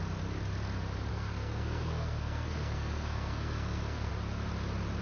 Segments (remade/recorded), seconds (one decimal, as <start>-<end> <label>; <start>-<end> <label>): 0.0-1.1 recorded; 1.1-4.1 remade; 4.1-5.0 recorded